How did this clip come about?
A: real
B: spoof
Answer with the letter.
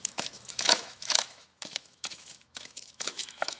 B